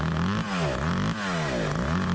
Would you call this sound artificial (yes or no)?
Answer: no